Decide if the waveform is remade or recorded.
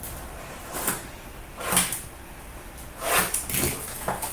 recorded